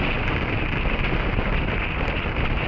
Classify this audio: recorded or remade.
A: recorded